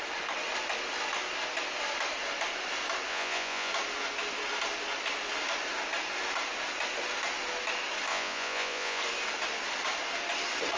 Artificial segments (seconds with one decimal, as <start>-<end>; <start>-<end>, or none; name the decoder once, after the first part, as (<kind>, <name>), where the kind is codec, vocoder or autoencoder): 3.1-3.7 (vocoder, Vocos); 8.1-9.0